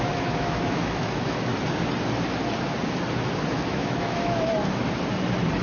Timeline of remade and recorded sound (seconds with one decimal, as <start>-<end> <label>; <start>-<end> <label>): 0.0-1.5 remade; 1.5-3.5 recorded; 3.5-4.6 remade; 4.6-5.6 recorded